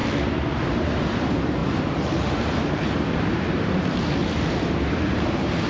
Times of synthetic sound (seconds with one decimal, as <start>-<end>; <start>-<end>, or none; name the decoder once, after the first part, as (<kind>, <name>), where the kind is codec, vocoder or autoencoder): 0.8-5.7 (vocoder, BigVGAN v2)